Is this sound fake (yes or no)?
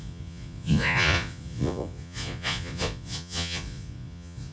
yes